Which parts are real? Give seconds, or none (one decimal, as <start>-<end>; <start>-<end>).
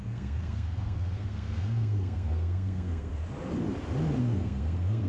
3.1-4.2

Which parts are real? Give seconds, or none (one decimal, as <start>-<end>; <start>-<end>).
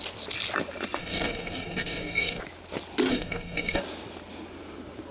0.0-1.0; 2.4-3.1; 3.8-5.1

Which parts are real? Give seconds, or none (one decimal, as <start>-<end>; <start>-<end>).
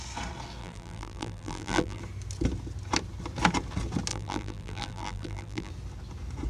0.0-0.6; 2.0-4.1; 5.7-6.5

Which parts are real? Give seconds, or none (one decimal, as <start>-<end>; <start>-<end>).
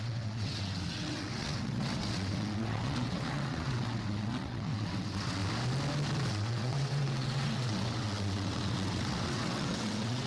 5.4-6.3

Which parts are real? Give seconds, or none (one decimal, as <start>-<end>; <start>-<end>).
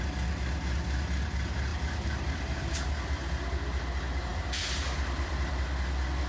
0.0-1.7; 2.9-4.3; 5.5-6.3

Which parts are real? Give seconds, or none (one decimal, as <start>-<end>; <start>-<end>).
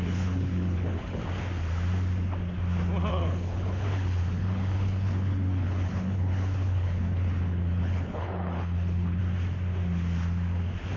1.2-3.1; 9.2-11.0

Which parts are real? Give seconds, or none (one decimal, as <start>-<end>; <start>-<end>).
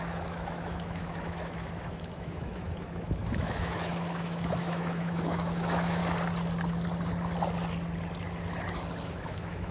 6.0-9.0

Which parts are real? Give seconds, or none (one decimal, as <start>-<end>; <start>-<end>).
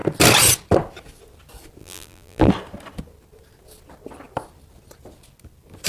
0.0-1.8; 2.5-5.9